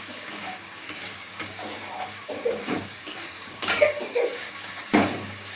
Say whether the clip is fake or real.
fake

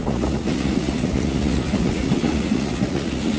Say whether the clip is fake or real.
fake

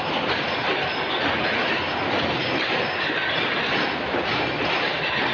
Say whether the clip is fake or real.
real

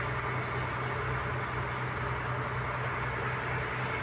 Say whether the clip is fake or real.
real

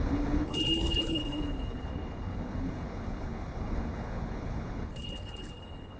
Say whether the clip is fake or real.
fake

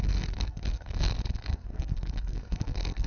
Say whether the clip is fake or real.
fake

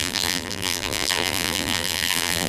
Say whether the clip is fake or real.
fake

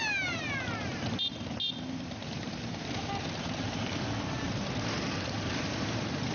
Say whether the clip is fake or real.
fake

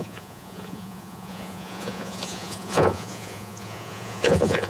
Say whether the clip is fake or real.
fake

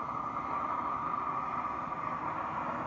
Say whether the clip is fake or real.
real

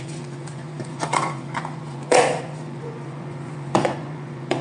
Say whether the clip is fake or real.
fake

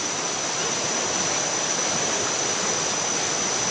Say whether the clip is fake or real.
real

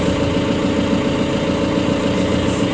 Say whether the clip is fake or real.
real